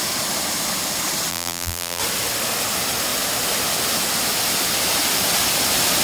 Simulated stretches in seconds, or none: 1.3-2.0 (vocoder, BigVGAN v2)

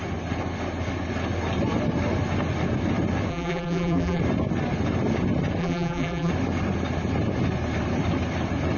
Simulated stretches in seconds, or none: 3.3-4.2 (vocoder, BigVGAN v2); 5.6-6.3

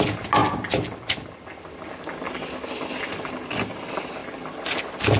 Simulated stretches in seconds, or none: none

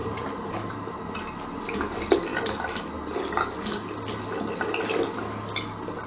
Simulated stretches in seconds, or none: 0.0-0.9 (vocoder, BigVGAN v2)

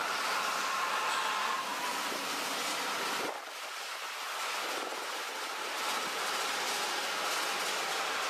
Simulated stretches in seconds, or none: 0.0-0.9 (vocoder, BigVGAN v2)

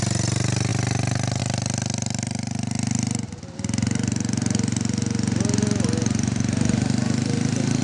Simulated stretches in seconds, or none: none

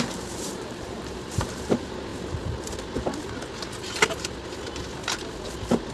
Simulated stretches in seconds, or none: 0.0-2.1 (vocoder, BigVGAN v2)